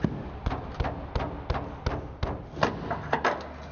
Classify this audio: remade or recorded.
recorded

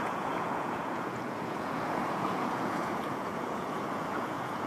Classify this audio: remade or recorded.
remade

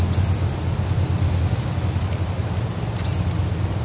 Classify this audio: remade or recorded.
recorded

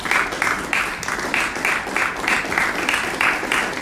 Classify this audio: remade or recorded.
recorded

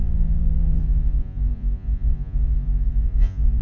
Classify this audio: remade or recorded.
remade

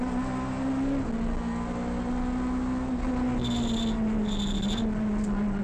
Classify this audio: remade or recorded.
recorded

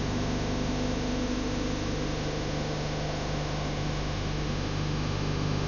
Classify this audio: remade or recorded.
remade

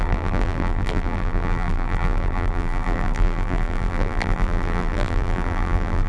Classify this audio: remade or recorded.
remade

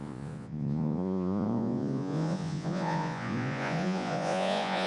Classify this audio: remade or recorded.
remade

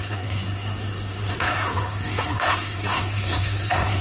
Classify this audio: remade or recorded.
remade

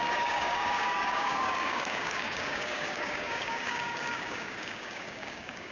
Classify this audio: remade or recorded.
remade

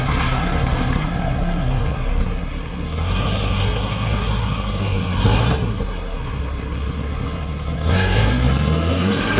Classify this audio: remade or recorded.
remade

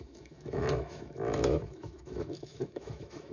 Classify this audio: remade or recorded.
remade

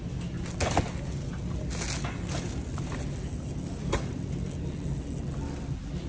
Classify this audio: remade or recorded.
recorded